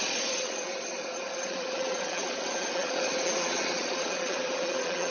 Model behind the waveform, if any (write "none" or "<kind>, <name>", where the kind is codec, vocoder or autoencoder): vocoder, Vocos